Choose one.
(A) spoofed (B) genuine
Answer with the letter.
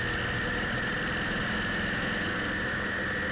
B